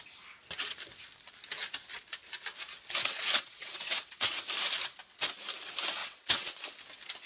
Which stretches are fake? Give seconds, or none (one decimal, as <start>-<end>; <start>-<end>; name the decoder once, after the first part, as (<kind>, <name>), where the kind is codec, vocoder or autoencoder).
3.0-4.4 (vocoder, WaveNeXt); 6.0-6.6